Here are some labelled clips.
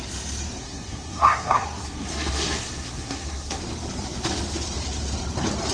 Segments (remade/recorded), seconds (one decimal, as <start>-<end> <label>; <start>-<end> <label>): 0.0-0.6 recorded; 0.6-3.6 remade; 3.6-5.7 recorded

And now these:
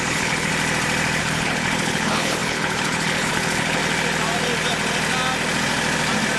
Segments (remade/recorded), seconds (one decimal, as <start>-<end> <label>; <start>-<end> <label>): 0.0-0.5 remade; 0.5-1.2 recorded; 1.2-3.8 remade; 3.8-6.4 recorded

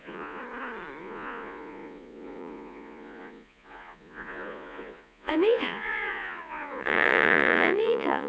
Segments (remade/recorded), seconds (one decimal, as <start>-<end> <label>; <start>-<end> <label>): 0.0-0.4 remade; 0.4-1.0 recorded; 1.0-8.3 remade